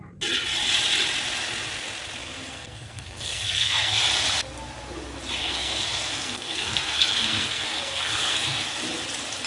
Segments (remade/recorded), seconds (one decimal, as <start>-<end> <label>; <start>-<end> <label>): 0.0-2.2 recorded; 2.2-4.0 remade; 4.0-5.4 recorded; 5.4-8.8 remade; 8.8-9.5 recorded